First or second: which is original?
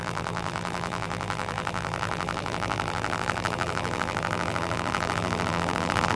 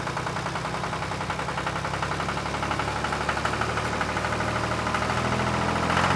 second